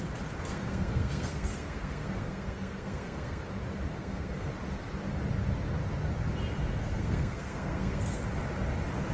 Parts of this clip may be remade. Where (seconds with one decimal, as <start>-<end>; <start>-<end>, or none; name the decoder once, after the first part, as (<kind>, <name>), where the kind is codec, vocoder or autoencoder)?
0.5-3.4 (codec, SNAC); 4.0-4.5; 6.8-8.2